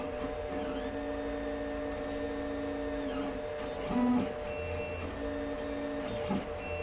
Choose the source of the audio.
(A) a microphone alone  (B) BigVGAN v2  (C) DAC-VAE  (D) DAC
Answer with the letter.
A